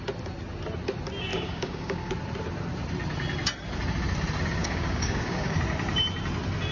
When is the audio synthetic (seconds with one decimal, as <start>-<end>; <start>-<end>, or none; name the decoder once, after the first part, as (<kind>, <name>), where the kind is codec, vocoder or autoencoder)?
1.3-2.1 (codec, DAC); 4.6-5.6